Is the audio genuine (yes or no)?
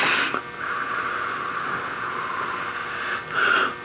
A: yes